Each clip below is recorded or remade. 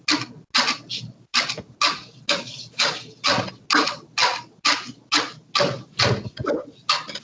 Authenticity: recorded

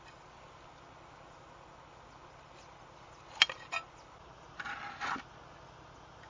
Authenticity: recorded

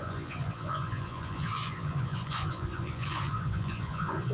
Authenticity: remade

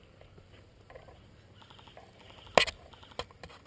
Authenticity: recorded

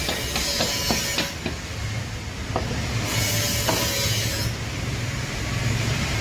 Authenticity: recorded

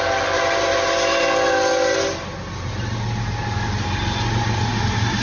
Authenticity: recorded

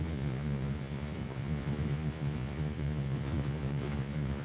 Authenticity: remade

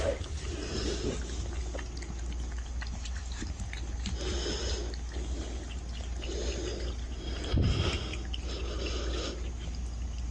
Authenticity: recorded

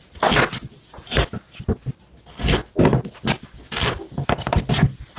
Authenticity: recorded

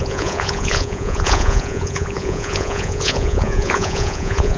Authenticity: remade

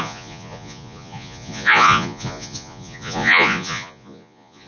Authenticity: remade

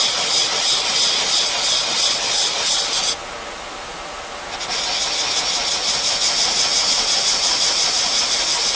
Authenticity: recorded